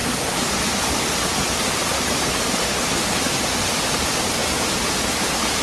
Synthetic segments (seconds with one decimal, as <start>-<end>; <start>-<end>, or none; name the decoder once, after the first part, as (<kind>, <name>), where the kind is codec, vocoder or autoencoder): 2.6-3.2 (codec, HILCodec)